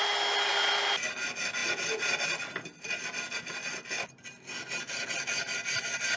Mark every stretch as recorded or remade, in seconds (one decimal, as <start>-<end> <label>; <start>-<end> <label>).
0.0-6.2 recorded